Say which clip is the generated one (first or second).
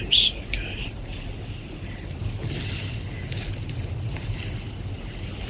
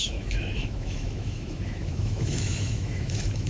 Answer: second